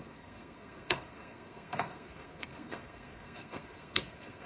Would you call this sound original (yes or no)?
no